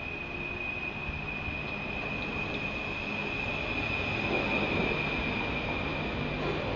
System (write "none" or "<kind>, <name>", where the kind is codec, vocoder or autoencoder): none